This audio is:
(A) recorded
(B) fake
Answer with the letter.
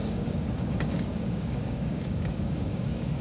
B